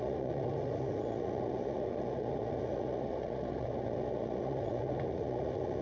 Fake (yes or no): yes